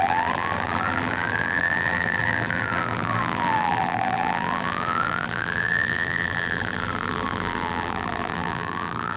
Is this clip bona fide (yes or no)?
no